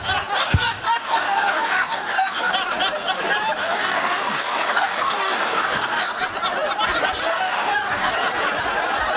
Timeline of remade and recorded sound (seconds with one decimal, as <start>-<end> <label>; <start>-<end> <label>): 0.0-0.4 recorded; 0.4-2.5 remade; 2.5-3.6 recorded; 3.6-6.2 remade; 6.2-7.3 recorded; 7.3-8.1 remade; 8.1-9.2 recorded